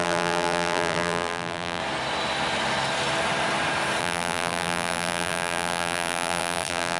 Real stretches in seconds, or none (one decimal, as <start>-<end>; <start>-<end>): 1.8-4.0